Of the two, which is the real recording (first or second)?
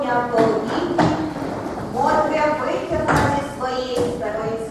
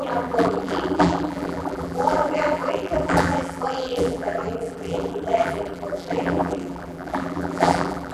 first